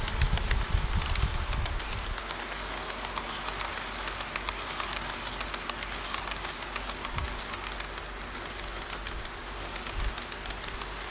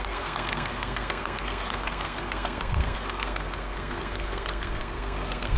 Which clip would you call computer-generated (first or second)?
second